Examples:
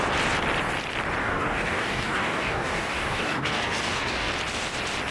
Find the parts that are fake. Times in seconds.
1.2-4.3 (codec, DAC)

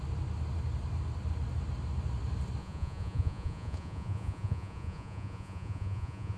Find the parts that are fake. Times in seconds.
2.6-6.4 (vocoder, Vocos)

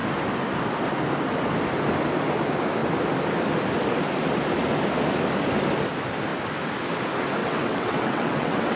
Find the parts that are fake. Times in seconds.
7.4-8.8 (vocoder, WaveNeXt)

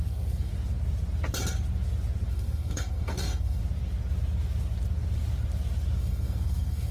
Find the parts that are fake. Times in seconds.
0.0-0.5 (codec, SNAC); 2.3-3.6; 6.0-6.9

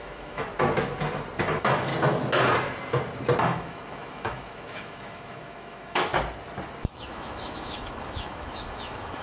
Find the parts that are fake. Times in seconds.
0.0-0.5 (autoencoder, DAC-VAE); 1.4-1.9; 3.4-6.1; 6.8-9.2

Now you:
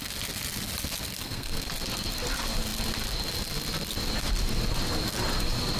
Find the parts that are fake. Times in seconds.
1.2-1.7 (codec, SNAC)

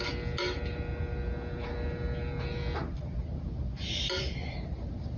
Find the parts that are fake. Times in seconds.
none

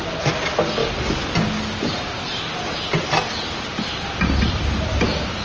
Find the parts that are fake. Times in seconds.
none